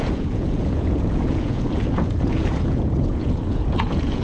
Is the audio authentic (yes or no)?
no